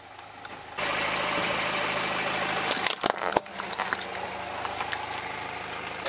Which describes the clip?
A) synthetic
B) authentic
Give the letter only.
B